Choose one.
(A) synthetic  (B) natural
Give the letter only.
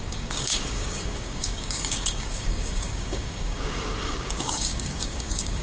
A